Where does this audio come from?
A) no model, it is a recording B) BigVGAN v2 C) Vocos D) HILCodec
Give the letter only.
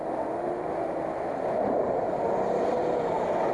A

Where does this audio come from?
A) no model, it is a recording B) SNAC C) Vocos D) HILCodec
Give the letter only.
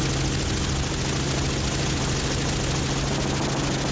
A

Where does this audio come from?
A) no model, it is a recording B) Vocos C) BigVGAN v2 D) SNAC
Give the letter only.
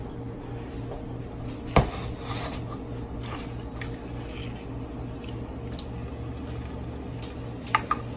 A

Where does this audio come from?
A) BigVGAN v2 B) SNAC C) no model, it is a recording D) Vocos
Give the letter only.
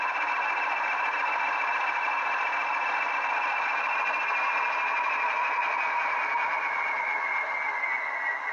C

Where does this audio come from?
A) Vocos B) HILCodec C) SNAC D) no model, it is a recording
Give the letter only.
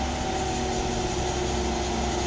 D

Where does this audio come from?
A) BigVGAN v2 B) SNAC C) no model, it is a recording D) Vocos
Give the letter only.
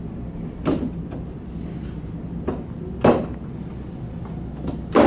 C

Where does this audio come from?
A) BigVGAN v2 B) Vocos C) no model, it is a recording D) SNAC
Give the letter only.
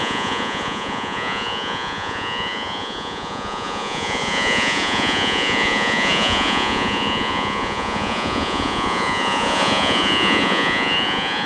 B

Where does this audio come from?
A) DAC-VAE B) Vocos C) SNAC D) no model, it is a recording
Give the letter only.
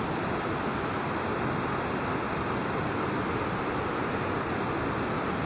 D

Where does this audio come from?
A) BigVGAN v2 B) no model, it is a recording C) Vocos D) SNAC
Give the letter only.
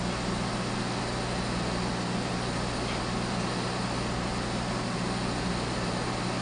B